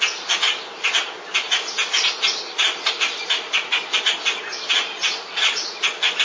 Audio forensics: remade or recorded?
recorded